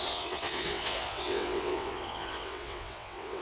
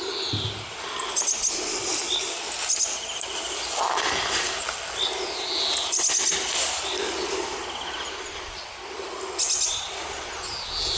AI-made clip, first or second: first